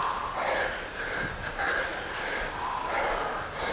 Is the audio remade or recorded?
recorded